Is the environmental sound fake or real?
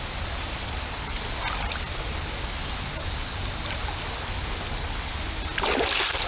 real